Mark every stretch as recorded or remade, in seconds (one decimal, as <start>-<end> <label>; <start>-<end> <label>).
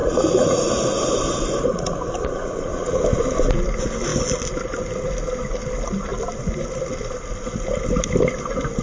0.0-0.7 remade; 0.7-1.7 recorded; 1.7-3.0 remade; 3.0-8.8 recorded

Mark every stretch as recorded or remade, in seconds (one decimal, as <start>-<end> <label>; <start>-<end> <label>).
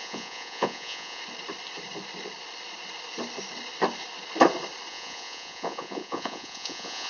0.0-1.2 remade; 1.2-4.9 recorded; 4.9-7.1 remade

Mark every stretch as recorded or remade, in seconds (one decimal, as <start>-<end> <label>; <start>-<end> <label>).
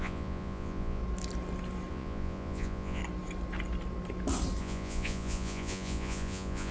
0.0-1.0 remade; 1.0-1.9 recorded; 1.9-3.0 remade; 3.0-4.6 recorded; 4.6-6.7 remade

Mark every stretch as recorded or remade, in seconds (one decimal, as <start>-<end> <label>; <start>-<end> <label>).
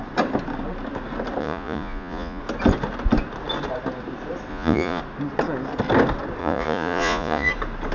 0.0-1.4 recorded; 1.4-2.4 remade; 2.4-4.5 recorded; 4.5-5.0 remade; 5.0-6.4 recorded; 6.4-7.5 remade; 7.5-7.9 recorded